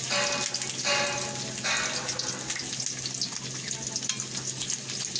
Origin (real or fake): real